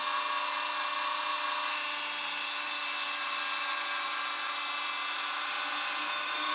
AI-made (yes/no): no